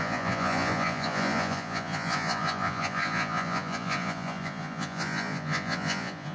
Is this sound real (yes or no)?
no